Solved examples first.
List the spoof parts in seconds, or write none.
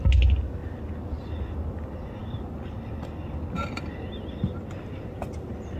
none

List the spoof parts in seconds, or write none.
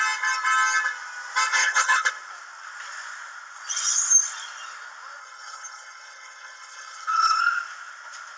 1.5-2.1 (codec, HILCodec); 5.2-7.4